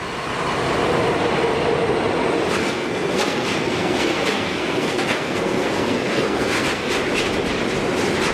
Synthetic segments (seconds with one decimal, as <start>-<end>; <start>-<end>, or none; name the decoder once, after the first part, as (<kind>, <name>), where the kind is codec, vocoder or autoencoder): 2.6-6.9 (codec, SNAC)